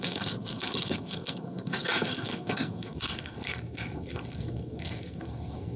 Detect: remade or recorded remade